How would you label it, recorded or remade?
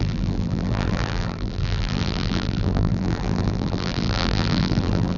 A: remade